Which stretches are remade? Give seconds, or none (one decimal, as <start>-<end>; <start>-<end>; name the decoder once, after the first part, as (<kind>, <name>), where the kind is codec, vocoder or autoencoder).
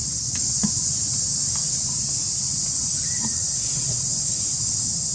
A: 0.0-0.7 (vocoder, Vocos); 3.3-4.6